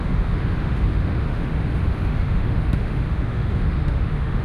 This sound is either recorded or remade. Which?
remade